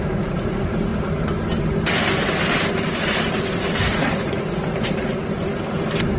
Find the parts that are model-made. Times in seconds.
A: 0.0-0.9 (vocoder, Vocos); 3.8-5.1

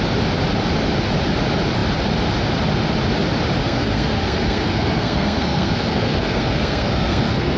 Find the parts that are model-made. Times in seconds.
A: 3.6-7.6 (codec, SNAC)

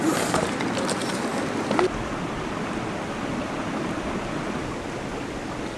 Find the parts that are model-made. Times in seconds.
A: none

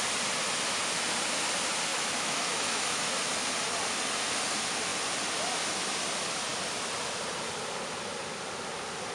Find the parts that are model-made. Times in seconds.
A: 1.9-3.1 (autoencoder, DAC-VAE)

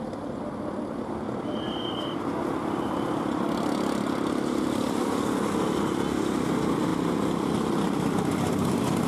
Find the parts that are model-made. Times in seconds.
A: none

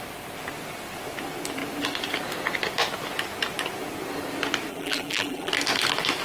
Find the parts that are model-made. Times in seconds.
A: 4.7-5.5 (vocoder, BigVGAN v2)

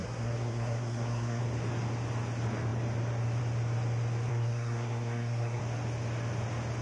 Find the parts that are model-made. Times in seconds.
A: 0.0-1.4 (codec, SNAC); 4.3-5.6